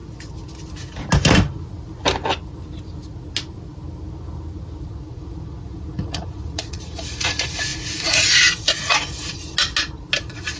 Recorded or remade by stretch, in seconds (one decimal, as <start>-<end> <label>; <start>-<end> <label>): 0.0-4.9 recorded; 4.9-9.4 remade; 9.4-10.2 recorded; 10.2-10.6 remade